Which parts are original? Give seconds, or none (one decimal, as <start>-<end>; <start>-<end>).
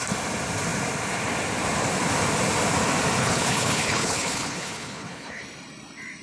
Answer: 0.0-3.2; 5.4-6.2